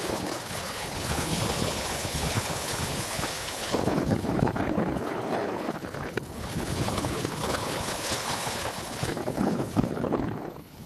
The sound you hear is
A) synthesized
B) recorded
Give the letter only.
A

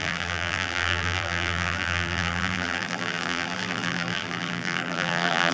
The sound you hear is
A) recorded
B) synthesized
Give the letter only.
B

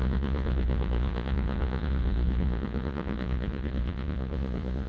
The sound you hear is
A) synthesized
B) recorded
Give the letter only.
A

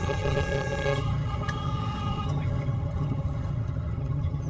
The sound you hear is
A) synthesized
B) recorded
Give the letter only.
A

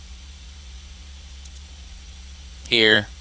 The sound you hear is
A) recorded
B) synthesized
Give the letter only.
B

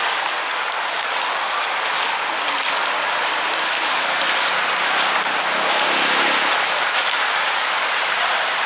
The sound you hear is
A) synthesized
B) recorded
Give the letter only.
B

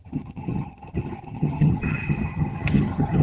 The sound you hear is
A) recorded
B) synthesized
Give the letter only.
B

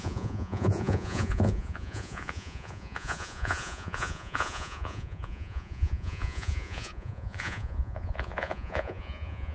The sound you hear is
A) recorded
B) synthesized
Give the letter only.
B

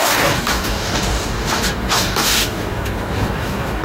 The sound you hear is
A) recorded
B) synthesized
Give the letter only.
B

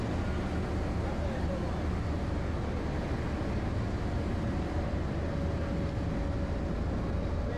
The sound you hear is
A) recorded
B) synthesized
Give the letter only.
A